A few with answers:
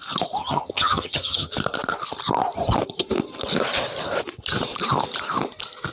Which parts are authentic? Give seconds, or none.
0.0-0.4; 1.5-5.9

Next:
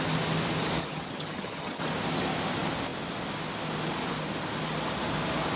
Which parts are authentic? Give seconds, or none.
0.0-0.8; 1.8-5.6